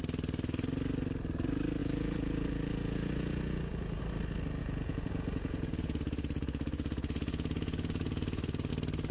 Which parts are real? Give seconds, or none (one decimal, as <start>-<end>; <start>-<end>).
0.0-1.8; 4.0-4.6; 8.7-9.1